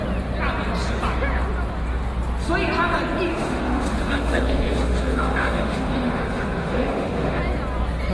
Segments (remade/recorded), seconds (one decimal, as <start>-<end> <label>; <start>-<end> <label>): 0.0-3.3 recorded; 3.3-7.4 remade; 7.4-8.1 recorded

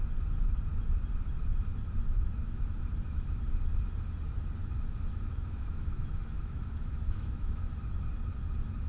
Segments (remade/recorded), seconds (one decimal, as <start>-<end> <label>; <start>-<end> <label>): 0.0-5.1 recorded; 5.1-7.7 remade; 7.7-8.9 recorded

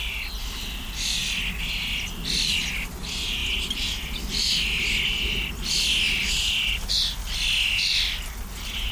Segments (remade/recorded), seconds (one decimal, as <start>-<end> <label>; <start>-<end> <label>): 0.0-8.9 recorded